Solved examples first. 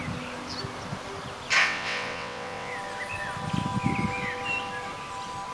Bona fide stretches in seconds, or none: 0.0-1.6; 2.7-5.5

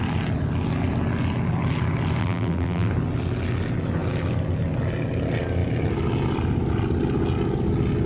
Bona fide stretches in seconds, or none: 0.0-2.2; 2.9-8.1

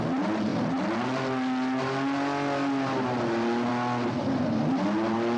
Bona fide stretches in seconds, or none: 0.0-5.4

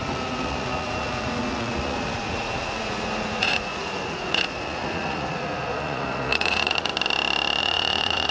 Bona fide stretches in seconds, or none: 6.9-7.6

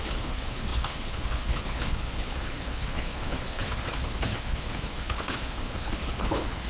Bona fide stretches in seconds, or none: none